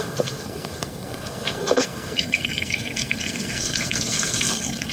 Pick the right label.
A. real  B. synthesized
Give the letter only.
B